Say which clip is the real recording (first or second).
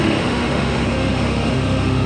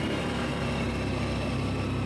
second